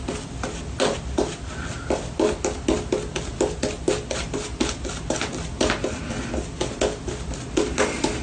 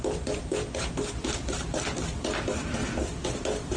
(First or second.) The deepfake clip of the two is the second